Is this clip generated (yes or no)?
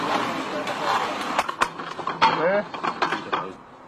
no